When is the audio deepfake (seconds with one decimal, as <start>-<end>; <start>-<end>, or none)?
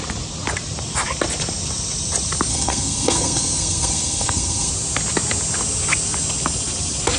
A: 2.5-4.7